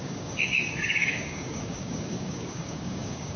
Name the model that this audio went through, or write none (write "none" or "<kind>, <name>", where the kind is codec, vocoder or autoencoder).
codec, DAC